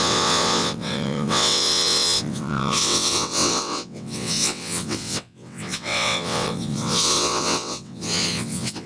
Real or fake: fake